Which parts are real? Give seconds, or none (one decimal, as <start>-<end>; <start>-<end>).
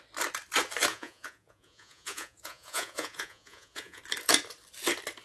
0.0-0.9; 4.0-5.2